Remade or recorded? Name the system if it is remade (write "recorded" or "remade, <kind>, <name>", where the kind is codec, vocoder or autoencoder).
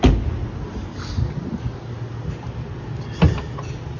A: recorded